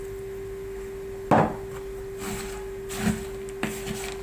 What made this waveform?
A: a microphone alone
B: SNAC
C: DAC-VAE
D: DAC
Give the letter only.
A